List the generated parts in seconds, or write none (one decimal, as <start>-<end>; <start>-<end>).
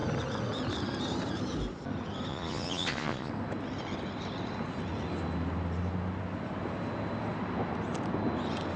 2.3-3.3